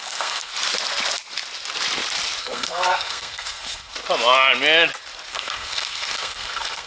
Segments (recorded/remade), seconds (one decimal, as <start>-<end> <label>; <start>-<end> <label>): 0.0-0.5 remade; 0.5-2.4 recorded; 2.4-3.9 remade; 3.9-5.3 recorded; 5.3-6.9 remade